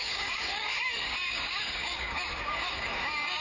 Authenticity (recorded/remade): remade